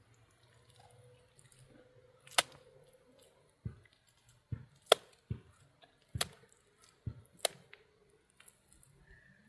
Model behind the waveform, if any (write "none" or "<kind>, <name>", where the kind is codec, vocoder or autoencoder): none